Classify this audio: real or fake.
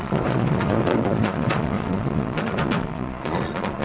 fake